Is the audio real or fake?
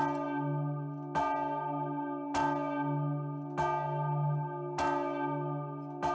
real